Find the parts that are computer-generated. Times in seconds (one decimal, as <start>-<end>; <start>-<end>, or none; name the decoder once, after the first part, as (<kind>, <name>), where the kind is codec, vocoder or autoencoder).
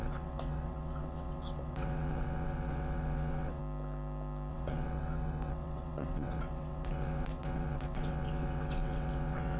0.0-3.6 (vocoder, WaveNeXt); 4.5-9.6